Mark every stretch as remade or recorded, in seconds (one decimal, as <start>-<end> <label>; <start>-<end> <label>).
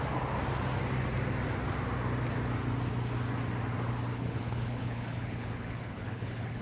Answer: 0.0-4.1 recorded; 4.1-6.6 remade